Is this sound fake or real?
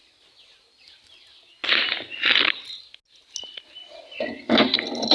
real